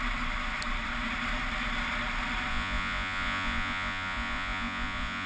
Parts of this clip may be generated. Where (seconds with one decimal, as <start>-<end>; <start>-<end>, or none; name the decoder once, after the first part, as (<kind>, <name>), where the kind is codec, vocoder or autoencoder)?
2.5-5.3 (vocoder, Vocos)